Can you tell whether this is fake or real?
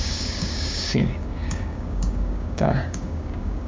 fake